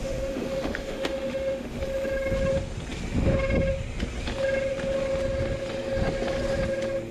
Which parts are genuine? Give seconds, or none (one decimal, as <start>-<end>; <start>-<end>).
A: 1.8-7.1